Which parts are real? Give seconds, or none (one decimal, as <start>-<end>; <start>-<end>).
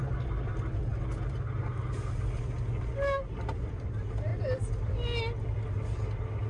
0.0-6.5